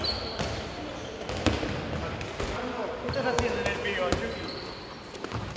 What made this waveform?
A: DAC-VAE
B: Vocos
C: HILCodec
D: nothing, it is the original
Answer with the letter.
D